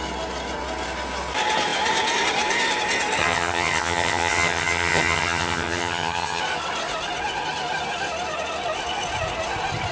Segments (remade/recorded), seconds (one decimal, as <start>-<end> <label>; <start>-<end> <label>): 0.0-3.2 recorded; 3.2-6.4 remade; 6.4-9.9 recorded